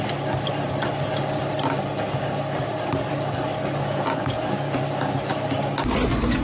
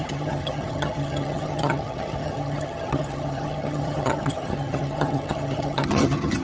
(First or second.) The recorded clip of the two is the first